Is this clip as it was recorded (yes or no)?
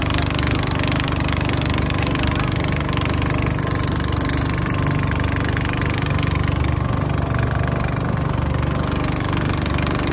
yes